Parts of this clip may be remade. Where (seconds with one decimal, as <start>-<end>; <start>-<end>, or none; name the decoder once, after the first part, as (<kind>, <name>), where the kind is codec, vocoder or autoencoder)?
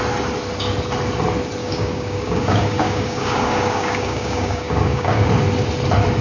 1.6-5.3 (codec, DAC)